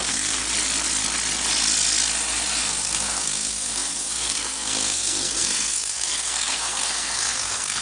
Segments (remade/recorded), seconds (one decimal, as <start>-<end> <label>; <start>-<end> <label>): 0.0-0.4 remade; 0.4-2.6 recorded; 2.6-7.8 remade